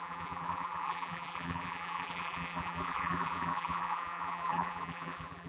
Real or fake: fake